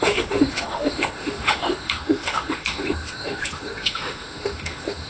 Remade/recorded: remade